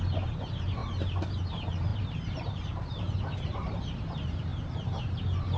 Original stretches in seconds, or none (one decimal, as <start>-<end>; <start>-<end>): 0.8-1.5; 4.5-5.6